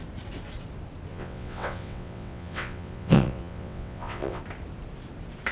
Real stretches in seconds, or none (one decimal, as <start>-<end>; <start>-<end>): 0.0-1.1; 4.4-5.5